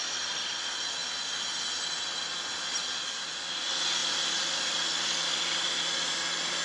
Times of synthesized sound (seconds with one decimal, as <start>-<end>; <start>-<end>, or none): none